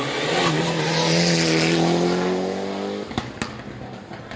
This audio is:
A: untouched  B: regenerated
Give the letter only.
A